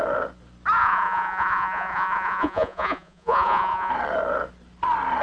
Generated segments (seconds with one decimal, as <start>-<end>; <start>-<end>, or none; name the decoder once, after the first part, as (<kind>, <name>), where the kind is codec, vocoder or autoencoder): 0.8-3.9 (vocoder, Vocos)